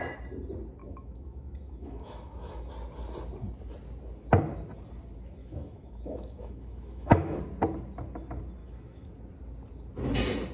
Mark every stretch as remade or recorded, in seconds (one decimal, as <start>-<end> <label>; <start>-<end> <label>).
0.0-0.8 recorded; 0.8-2.7 remade; 2.7-5.4 recorded; 5.4-7.4 remade; 7.4-8.6 recorded; 8.6-9.1 remade; 9.1-10.5 recorded